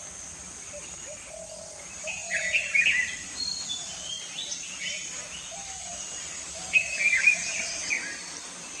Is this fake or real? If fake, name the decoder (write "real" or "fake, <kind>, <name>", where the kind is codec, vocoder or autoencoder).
fake, vocoder, BigVGAN v2